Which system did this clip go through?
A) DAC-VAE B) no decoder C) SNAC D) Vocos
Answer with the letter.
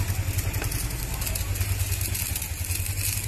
B